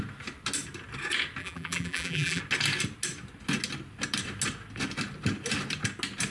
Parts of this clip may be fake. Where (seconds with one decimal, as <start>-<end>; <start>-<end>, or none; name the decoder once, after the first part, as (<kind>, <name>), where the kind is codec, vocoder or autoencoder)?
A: 1.4-2.4 (vocoder, BigVGAN v2)